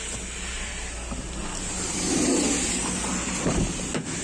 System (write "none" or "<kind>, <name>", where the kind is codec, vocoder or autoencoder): none